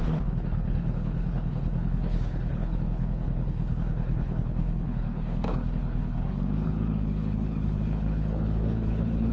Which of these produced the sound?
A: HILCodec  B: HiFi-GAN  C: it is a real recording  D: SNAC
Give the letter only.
A